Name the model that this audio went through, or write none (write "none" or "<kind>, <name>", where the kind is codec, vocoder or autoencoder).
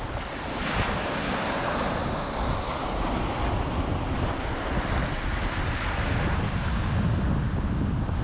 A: none